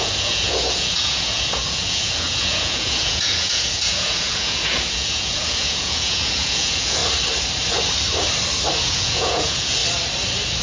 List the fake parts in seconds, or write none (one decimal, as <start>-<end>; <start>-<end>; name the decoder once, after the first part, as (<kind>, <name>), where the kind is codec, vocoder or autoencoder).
0.0-7.0 (vocoder, Vocos); 8.8-9.8